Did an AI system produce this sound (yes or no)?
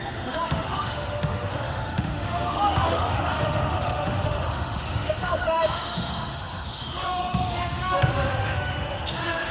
yes